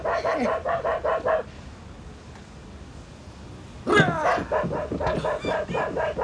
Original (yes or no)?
yes